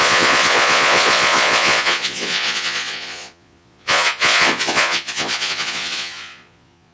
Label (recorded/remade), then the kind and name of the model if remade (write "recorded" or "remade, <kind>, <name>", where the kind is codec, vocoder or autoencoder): remade, vocoder, Vocos